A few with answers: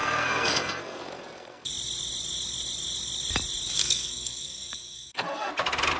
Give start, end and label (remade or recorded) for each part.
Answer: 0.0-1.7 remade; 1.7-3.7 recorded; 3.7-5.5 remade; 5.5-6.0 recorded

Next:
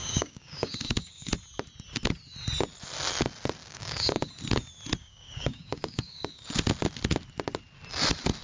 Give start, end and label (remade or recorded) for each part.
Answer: 0.0-1.3 remade; 1.3-3.6 recorded; 3.6-4.3 remade; 4.3-5.0 recorded; 5.0-6.5 remade; 6.5-8.4 recorded